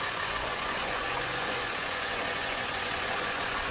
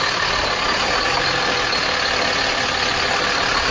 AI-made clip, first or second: first